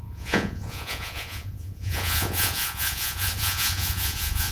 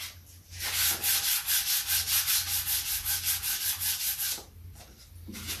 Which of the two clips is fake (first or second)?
first